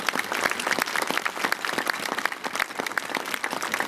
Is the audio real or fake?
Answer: real